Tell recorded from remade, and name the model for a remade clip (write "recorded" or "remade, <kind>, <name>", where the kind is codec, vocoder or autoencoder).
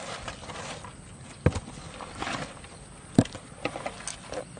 recorded